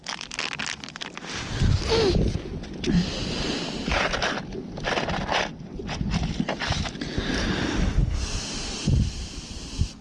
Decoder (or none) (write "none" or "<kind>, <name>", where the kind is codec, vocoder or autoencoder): none